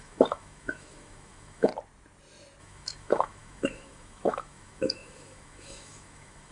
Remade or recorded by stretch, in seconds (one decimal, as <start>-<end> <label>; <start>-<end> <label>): 0.0-1.7 remade; 1.7-2.6 recorded; 2.6-6.5 remade

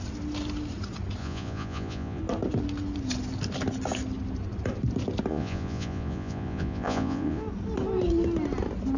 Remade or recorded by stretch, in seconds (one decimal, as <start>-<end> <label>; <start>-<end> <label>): 0.0-1.2 recorded; 1.2-2.2 remade; 2.2-5.3 recorded; 5.3-7.4 remade; 7.4-9.0 recorded